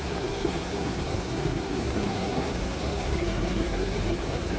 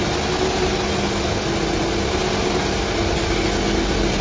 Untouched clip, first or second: second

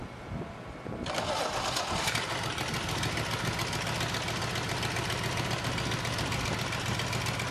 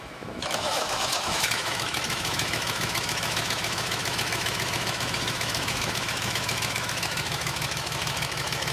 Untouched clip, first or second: first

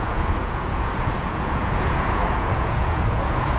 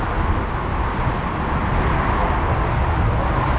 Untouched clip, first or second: second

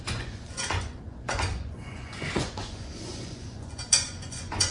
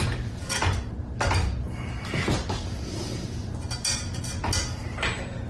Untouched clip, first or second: second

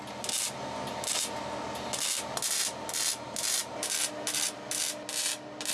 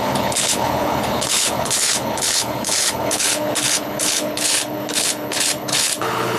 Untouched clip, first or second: first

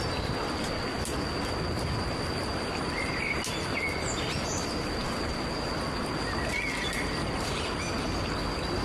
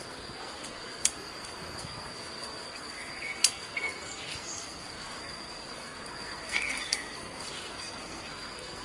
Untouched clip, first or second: first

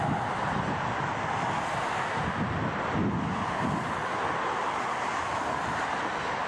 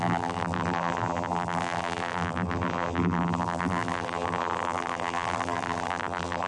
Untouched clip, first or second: first